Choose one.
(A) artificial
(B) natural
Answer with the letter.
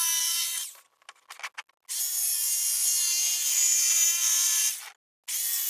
B